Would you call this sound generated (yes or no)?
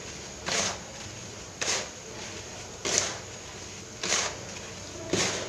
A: no